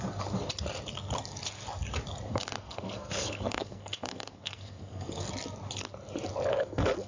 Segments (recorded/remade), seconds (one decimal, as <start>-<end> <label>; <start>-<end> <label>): 0.0-2.3 recorded; 2.3-5.3 remade; 5.3-6.5 recorded; 6.5-7.1 remade